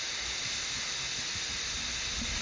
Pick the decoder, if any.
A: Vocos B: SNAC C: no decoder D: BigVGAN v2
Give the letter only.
C